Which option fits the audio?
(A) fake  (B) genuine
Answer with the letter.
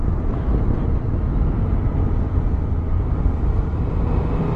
B